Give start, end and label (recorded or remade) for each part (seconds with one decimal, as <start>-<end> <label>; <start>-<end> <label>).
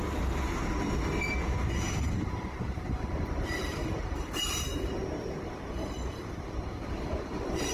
0.0-0.6 remade; 0.6-2.0 recorded; 2.0-4.7 remade; 4.7-5.2 recorded; 5.2-7.7 remade